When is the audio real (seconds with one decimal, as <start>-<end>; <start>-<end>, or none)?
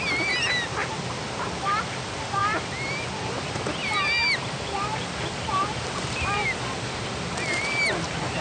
0.0-8.4